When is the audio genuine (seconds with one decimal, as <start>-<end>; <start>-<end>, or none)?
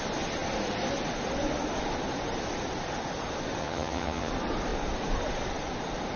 0.0-3.6; 4.3-6.2